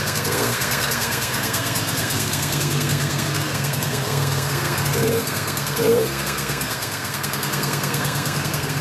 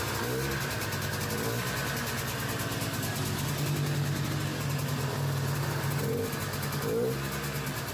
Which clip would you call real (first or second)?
second